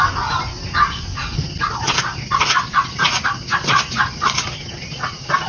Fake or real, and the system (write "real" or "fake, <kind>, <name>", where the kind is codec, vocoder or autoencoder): real